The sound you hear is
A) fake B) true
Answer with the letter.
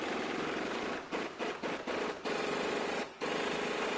B